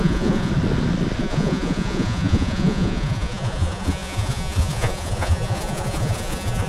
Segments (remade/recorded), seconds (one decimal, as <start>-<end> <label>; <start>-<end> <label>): 0.0-0.5 remade; 0.5-1.2 recorded; 1.2-6.7 remade